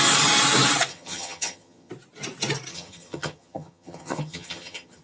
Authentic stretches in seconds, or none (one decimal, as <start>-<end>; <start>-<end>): 0.0-0.9; 1.9-2.7